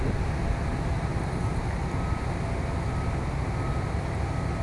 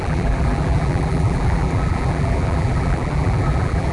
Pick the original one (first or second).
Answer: first